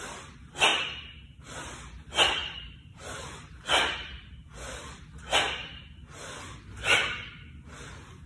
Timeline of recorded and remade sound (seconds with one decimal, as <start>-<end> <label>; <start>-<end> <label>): 0.0-0.7 recorded; 0.7-1.4 remade; 1.4-2.4 recorded; 2.4-3.2 remade; 3.2-8.3 recorded